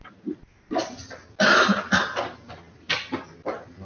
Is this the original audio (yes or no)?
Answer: yes